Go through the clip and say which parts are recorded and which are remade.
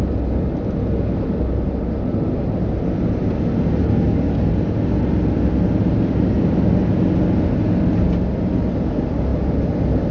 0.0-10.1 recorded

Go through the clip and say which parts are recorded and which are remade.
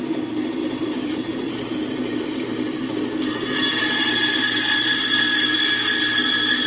0.0-0.6 recorded; 0.6-1.5 remade; 1.5-3.8 recorded; 3.8-4.4 remade; 4.4-6.7 recorded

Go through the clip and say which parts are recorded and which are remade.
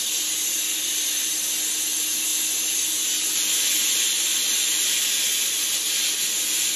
0.0-2.3 recorded; 2.3-3.6 remade; 3.6-6.8 recorded